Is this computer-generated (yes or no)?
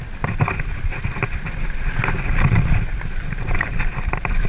no